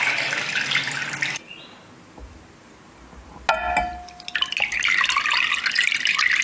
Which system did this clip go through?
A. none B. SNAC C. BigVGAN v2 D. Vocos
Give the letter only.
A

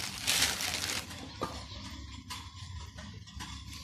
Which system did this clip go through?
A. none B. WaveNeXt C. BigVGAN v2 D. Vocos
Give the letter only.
A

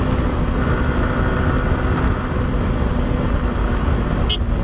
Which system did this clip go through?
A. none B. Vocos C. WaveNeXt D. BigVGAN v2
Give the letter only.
A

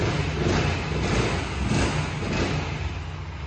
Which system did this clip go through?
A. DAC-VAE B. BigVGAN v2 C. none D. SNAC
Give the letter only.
C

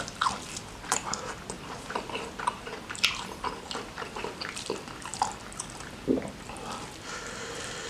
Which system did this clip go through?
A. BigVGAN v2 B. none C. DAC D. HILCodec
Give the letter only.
A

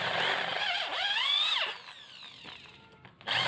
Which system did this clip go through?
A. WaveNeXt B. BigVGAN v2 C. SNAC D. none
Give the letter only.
D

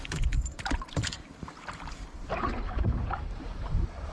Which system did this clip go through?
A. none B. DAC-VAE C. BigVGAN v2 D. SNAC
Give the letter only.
C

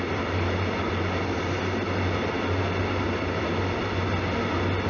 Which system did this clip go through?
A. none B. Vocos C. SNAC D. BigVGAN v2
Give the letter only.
A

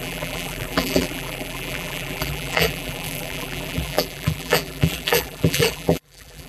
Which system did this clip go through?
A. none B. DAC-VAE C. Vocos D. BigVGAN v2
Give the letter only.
D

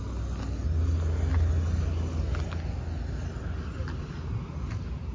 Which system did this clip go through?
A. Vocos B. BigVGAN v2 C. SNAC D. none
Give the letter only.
D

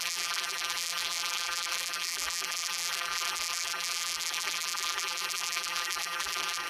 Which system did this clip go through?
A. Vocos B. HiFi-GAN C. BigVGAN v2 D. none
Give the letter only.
C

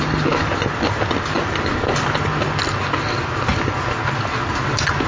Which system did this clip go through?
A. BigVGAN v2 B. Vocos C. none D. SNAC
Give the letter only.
C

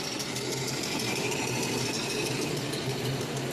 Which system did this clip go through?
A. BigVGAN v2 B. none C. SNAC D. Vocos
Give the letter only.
A